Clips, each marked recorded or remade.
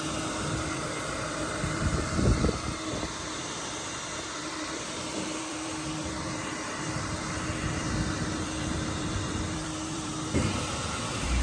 remade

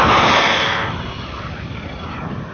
recorded